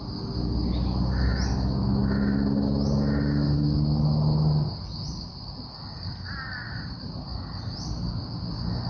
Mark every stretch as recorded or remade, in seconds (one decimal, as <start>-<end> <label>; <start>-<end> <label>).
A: 0.0-8.9 recorded